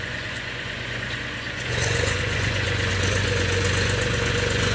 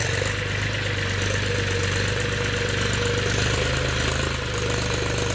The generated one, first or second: first